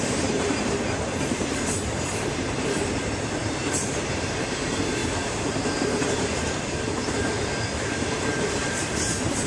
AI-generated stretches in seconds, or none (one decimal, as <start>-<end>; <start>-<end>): 0.0-9.5